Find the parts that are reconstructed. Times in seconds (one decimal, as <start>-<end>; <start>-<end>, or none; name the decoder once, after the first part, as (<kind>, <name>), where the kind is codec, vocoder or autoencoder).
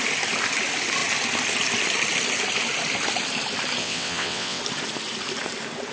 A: 3.8-4.6 (vocoder, WaveNeXt)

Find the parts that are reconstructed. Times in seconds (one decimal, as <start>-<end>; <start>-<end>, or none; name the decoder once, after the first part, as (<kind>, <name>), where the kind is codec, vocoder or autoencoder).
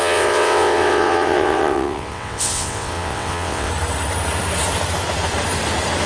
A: 0.0-3.7 (vocoder, WaveNeXt)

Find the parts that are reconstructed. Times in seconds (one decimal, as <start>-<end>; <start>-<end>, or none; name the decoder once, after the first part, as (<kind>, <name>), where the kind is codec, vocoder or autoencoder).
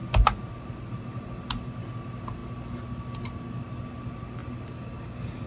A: none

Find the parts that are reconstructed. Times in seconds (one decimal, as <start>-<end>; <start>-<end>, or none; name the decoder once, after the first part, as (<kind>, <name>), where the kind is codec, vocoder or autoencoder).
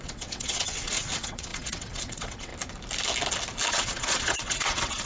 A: 0.0-2.5 (vocoder, WaveNeXt); 3.7-5.1